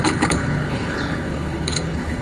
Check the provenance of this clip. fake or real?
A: fake